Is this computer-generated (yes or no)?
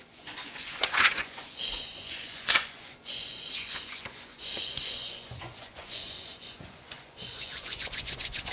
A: yes